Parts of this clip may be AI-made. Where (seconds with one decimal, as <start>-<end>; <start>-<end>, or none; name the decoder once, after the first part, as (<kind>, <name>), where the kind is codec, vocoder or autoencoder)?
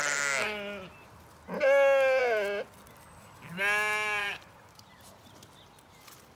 4.2-4.9 (vocoder, BigVGAN v2)